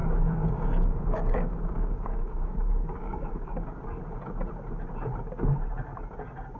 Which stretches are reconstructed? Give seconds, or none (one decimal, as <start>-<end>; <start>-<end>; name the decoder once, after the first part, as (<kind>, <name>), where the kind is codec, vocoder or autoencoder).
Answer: 0.0-3.8 (codec, DAC)